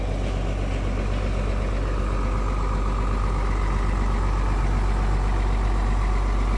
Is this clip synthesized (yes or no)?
no